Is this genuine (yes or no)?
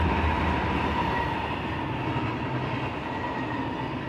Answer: yes